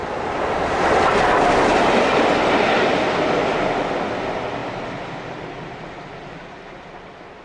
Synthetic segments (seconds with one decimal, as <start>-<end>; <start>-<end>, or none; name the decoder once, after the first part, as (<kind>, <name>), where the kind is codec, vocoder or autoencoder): none